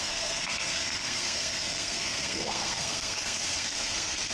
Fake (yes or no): yes